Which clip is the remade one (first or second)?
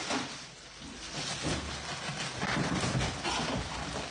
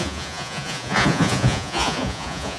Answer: second